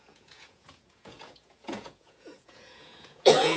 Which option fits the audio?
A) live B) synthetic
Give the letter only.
B